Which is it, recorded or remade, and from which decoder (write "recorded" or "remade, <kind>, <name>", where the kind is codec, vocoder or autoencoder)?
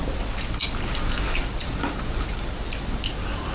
recorded